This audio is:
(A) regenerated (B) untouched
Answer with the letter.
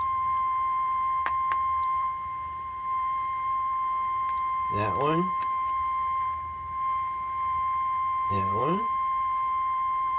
A